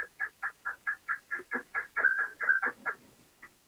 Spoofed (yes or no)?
yes